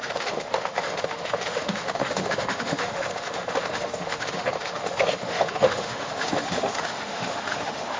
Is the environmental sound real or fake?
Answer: fake